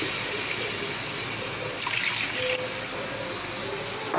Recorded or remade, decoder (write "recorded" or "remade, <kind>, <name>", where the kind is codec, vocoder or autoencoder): recorded